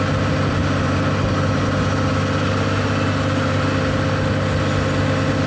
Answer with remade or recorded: recorded